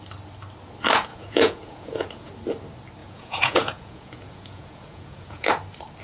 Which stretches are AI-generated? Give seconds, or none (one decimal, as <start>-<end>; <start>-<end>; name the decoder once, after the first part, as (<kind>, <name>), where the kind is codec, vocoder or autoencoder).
1.1-2.3 (vocoder, Vocos); 3.0-5.5